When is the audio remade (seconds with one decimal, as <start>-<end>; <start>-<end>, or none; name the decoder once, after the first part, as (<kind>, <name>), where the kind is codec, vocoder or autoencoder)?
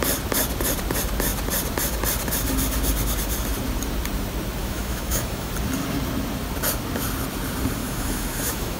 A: 4.6-5.5 (autoencoder, DAC-VAE); 7.8-8.8